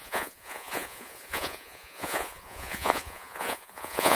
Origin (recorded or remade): remade